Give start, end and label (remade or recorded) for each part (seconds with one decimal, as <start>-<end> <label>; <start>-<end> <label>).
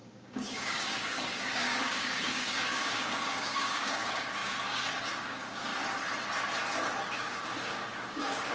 0.0-5.7 remade; 5.7-7.0 recorded; 7.0-8.5 remade